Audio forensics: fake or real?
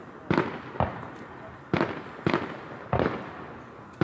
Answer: real